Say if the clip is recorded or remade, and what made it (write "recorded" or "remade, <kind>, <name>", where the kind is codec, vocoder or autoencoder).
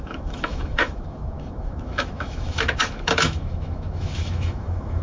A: remade, autoencoder, DAC-VAE